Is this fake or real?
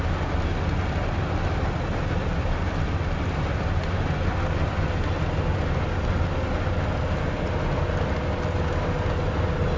real